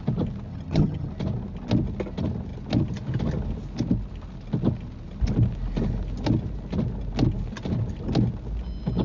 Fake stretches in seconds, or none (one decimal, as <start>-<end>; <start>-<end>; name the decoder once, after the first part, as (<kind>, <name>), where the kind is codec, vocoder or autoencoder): 0.5-1.1 (vocoder, HiFi-GAN)